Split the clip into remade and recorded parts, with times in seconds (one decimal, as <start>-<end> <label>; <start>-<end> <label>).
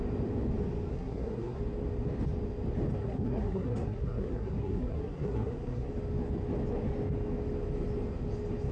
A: 0.0-0.9 recorded; 0.9-1.6 remade; 1.6-3.0 recorded; 3.0-5.9 remade; 5.9-8.7 recorded